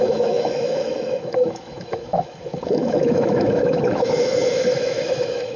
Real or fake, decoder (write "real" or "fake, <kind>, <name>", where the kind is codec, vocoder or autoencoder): fake, autoencoder, DAC-VAE